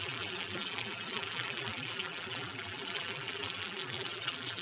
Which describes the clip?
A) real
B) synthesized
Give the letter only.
B